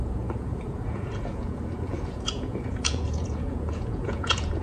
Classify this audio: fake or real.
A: fake